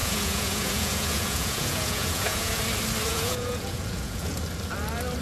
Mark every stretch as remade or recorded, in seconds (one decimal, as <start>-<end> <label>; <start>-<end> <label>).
0.0-2.6 remade; 2.6-3.1 recorded; 3.1-4.4 remade; 4.4-5.2 recorded

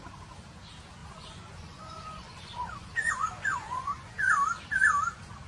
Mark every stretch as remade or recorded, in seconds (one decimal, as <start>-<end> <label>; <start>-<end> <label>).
0.0-1.0 recorded; 1.0-4.3 remade; 4.3-5.5 recorded

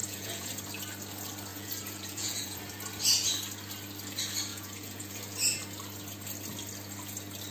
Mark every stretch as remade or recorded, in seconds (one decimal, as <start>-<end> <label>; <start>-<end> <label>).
0.0-0.5 remade; 0.5-1.5 recorded; 1.5-2.6 remade; 2.6-4.5 recorded; 4.5-5.2 remade; 5.2-7.5 recorded

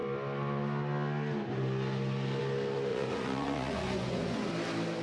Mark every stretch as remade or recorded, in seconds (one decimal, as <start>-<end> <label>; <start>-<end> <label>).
0.0-2.9 recorded; 2.9-4.5 remade; 4.5-5.0 recorded